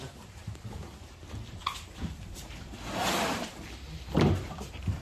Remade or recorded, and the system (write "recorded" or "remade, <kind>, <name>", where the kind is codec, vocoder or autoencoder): remade, vocoder, BigVGAN v2